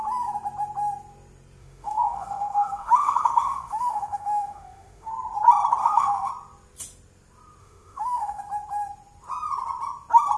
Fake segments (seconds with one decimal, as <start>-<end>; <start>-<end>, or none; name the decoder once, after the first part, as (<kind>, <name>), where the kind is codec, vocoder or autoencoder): 1.6-5.1 (autoencoder, DAC-VAE); 5.8-6.3; 7.6-8.4